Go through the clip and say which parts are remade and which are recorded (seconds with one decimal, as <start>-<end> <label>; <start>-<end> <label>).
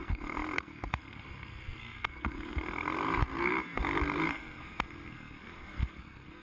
0.0-6.4 remade